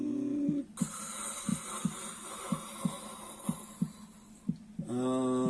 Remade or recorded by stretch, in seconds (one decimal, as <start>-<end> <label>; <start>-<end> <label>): 0.0-5.5 recorded